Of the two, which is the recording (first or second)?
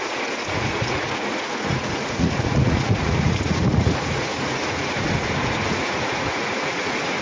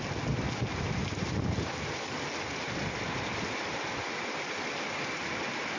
second